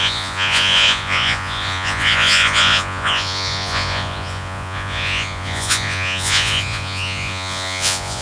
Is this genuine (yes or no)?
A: no